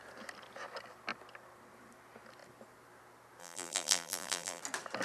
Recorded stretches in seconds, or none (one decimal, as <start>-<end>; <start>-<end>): 0.0-3.4; 4.6-5.0